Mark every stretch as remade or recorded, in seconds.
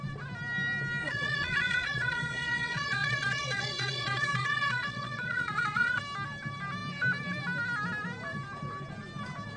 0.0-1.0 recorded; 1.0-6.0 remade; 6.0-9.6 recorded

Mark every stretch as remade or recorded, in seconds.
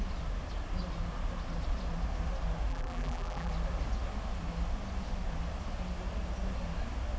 0.0-2.7 recorded; 2.7-3.5 remade; 3.5-7.2 recorded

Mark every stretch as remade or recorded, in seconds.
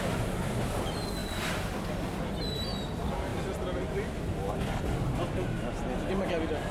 0.0-6.7 recorded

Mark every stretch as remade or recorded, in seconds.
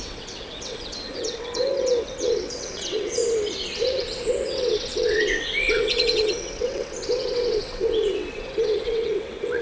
0.0-3.2 remade; 3.2-3.7 recorded; 3.7-9.6 remade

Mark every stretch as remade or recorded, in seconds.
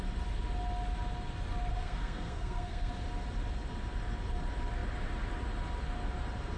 0.0-1.7 recorded; 1.7-2.9 remade; 2.9-6.6 recorded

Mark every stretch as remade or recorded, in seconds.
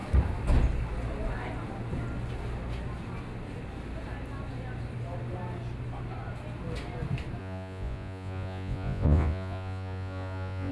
0.0-7.4 recorded; 7.4-10.7 remade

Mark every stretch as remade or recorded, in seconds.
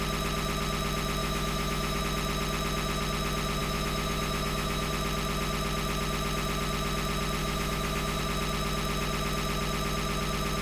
0.0-1.2 recorded; 1.2-2.0 remade; 2.0-3.6 recorded; 3.6-4.9 remade; 4.9-7.4 recorded; 7.4-8.2 remade; 8.2-10.6 recorded